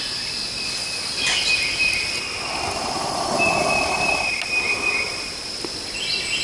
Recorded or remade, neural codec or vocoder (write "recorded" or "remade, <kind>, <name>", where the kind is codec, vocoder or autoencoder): recorded